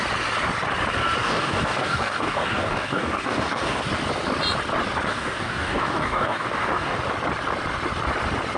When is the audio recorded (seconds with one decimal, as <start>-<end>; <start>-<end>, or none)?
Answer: 0.0-1.2; 3.8-5.1; 7.0-8.6